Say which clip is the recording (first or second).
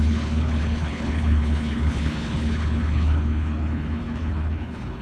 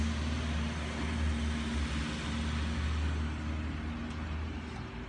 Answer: second